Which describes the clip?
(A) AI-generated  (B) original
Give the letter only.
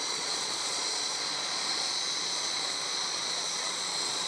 A